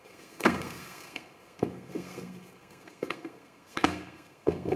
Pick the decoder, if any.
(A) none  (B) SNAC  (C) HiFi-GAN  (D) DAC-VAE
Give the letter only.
B